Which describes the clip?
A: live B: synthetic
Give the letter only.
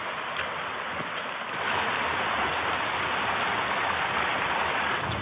A